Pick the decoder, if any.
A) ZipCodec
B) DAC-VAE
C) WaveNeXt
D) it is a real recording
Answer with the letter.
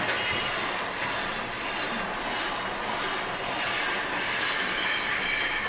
D